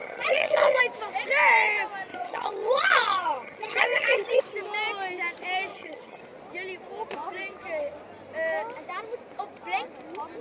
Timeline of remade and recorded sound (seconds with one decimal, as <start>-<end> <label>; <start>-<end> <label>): 0.0-0.8 remade; 0.8-2.1 recorded; 2.1-4.4 remade; 4.4-5.7 recorded; 5.7-6.2 remade; 6.2-10.4 recorded